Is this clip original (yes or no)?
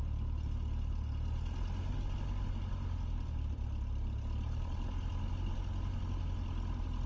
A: yes